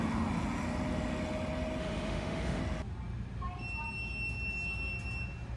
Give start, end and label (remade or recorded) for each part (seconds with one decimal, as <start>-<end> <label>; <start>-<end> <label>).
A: 0.0-1.8 recorded; 1.8-2.6 remade; 2.6-5.6 recorded